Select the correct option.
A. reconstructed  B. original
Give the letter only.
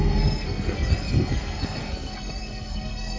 A